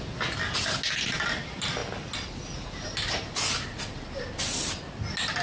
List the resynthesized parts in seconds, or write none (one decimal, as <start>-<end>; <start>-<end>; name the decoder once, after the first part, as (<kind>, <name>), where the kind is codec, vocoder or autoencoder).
none